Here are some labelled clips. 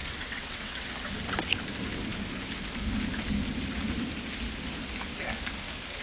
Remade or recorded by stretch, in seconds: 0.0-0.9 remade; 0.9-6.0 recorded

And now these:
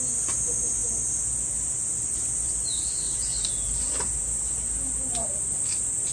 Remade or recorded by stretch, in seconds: 0.0-6.1 recorded

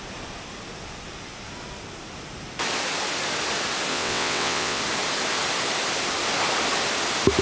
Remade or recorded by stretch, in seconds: 0.0-3.9 recorded; 3.9-4.8 remade; 4.8-7.4 recorded